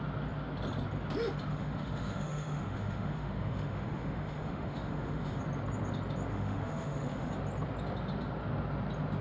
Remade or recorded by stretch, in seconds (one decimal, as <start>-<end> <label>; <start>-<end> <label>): 0.0-1.5 recorded; 1.5-5.4 remade; 5.4-6.3 recorded; 6.3-7.3 remade; 7.3-9.2 recorded